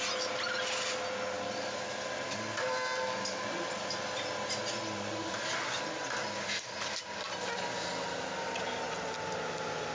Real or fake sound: real